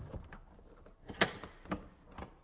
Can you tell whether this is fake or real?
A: real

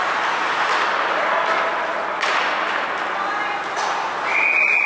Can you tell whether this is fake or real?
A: real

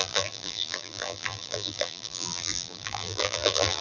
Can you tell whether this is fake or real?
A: fake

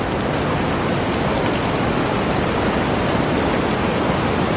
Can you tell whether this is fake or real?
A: real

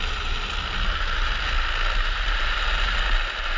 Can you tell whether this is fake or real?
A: real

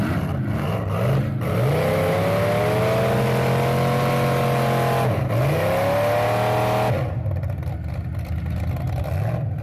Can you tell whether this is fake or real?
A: real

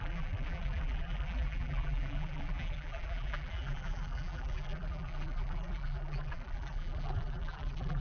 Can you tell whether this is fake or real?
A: fake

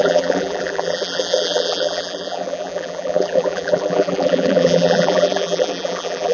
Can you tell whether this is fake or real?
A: fake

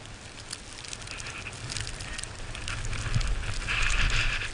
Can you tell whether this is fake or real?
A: real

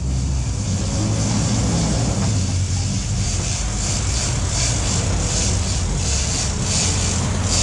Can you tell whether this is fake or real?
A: real